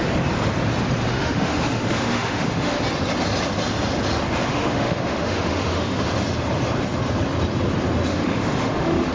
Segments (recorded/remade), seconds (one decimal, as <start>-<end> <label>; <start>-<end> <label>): 0.0-1.1 recorded; 1.1-2.8 remade; 2.8-4.5 recorded; 4.5-6.0 remade; 6.0-8.1 recorded; 8.1-9.1 remade